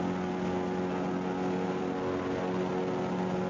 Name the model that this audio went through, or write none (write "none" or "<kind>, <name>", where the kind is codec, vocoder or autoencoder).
none